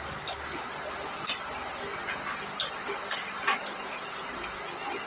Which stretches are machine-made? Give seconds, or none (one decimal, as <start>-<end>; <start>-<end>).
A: 3.6-4.3